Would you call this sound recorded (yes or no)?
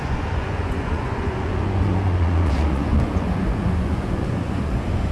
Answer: no